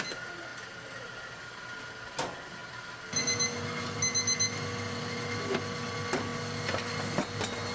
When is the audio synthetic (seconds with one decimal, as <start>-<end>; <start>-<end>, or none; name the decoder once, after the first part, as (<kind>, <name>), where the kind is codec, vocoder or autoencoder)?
none